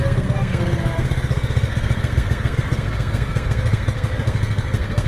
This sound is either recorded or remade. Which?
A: remade